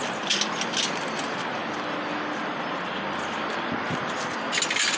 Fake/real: real